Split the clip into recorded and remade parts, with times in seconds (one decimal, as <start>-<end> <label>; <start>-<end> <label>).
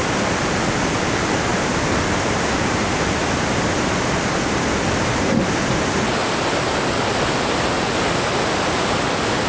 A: 0.0-1.5 recorded; 1.5-3.2 remade; 3.2-9.5 recorded